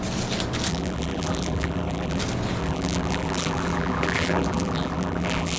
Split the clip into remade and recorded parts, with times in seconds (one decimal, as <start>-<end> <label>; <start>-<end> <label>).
0.0-0.7 recorded; 0.7-2.2 remade; 2.2-2.6 recorded; 2.6-5.6 remade